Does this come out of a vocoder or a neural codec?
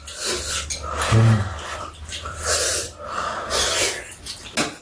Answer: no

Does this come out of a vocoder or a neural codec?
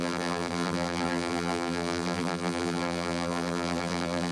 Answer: yes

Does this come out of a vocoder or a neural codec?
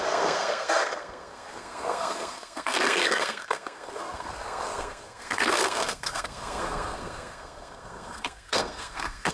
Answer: yes